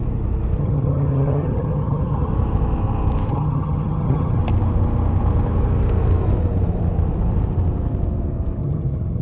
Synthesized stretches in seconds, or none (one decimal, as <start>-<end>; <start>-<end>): 0.6-2.3; 3.3-4.4; 8.6-9.2